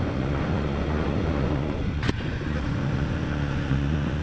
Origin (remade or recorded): remade